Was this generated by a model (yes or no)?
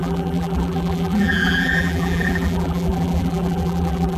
yes